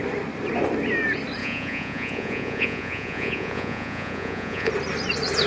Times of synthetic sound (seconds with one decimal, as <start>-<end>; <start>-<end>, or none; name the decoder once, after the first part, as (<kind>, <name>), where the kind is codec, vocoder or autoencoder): 1.4-4.7 (vocoder, Vocos)